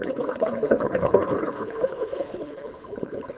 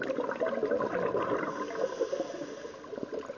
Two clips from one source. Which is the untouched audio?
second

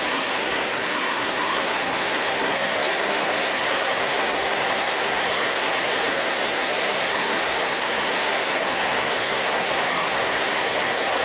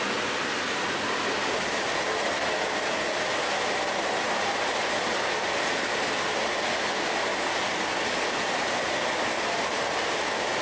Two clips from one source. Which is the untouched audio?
second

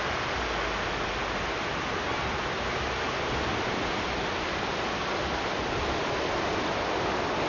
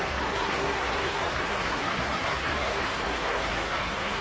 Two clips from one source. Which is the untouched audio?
first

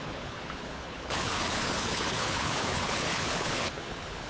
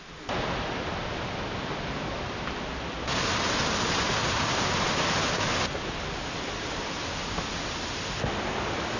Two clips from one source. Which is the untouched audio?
second